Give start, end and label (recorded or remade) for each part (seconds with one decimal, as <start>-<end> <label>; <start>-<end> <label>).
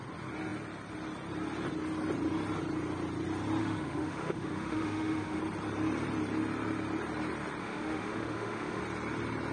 0.0-3.6 recorded; 3.6-5.4 remade; 5.4-7.6 recorded; 7.6-8.8 remade; 8.8-9.5 recorded